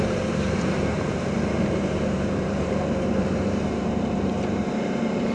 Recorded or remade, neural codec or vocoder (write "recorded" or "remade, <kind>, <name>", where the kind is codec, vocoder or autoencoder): remade, vocoder, BigVGAN v2